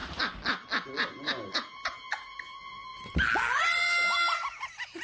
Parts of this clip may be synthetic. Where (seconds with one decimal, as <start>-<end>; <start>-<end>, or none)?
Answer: none